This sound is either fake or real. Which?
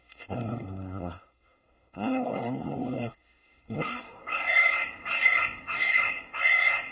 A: fake